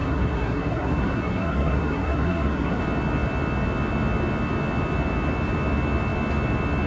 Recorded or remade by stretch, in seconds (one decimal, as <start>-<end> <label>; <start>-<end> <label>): 0.0-2.8 remade; 2.8-6.9 recorded